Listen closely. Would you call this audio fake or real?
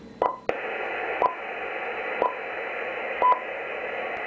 real